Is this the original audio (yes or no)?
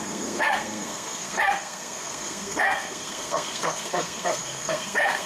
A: no